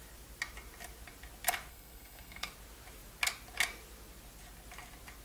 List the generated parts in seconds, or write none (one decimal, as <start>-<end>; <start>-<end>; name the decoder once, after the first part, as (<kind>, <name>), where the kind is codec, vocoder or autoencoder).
1.7-2.5 (codec, SNAC)